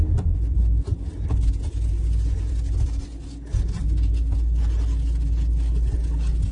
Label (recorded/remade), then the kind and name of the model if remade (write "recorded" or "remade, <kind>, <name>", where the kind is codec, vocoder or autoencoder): recorded